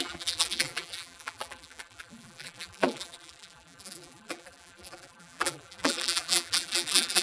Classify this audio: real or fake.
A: fake